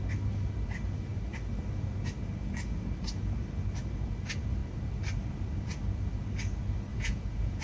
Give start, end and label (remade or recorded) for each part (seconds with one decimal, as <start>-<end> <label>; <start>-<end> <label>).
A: 0.0-6.9 recorded; 6.9-7.6 remade